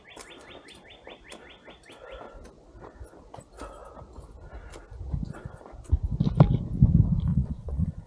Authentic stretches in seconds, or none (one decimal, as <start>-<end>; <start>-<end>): 0.0-7.3